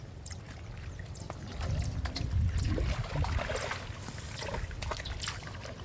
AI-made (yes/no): no